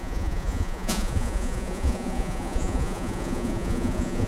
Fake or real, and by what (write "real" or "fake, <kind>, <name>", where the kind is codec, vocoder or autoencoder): fake, vocoder, Vocos